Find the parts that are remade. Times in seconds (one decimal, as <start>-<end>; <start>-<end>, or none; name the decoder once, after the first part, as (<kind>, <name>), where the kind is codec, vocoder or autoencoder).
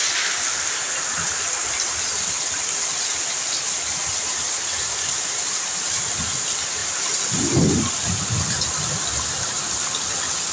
none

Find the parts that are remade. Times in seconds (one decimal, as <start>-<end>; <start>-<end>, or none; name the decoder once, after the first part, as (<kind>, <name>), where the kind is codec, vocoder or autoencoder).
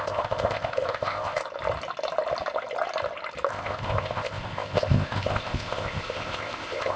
0.0-1.4 (codec, ZipCodec); 3.5-7.0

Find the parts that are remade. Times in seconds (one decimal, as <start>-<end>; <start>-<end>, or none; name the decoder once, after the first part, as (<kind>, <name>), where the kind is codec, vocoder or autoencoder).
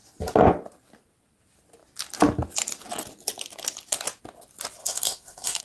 4.8-5.6 (autoencoder, DAC-VAE)